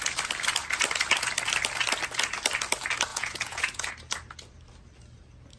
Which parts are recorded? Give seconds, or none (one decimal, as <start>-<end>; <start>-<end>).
0.0-3.1; 3.9-5.6